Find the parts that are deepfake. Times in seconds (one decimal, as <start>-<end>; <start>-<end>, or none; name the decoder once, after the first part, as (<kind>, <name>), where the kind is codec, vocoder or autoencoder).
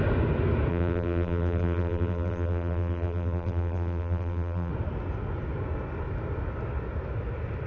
0.7-4.7 (vocoder, BigVGAN v2)